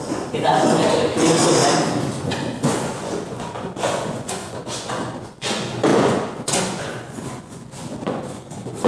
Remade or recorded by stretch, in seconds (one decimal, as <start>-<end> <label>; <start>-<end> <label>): 0.0-1.6 remade; 1.6-2.2 recorded; 2.2-8.9 remade